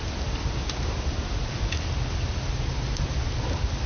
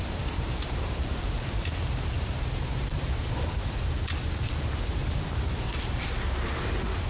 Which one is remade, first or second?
second